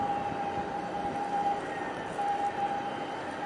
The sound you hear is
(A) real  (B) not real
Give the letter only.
A